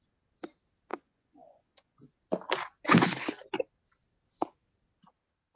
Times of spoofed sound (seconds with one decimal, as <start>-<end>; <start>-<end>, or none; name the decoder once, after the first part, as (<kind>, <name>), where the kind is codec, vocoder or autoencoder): 0.9-2.0 (vocoder, Vocos)

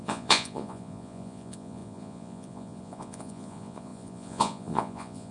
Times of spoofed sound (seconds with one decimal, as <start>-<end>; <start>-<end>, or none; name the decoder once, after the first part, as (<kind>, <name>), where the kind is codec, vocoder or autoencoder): 0.0-5.3 (vocoder, Vocos)

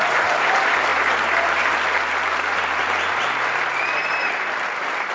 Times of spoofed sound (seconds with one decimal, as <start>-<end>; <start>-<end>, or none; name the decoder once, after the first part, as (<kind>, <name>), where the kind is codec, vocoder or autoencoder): none